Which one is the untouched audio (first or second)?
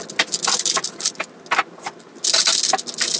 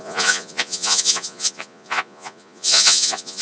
first